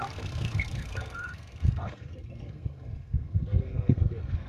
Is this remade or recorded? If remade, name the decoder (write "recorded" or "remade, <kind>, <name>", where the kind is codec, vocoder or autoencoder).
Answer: remade, codec, SNAC